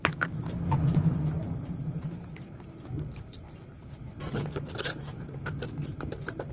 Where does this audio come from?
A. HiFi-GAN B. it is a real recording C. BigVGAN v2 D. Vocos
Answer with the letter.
C